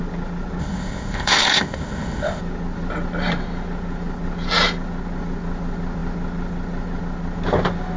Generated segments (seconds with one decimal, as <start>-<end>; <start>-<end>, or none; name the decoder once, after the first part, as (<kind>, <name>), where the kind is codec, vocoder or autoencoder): 0.6-2.4 (codec, ZipCodec)